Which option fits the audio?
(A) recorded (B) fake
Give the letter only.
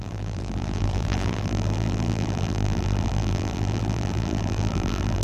B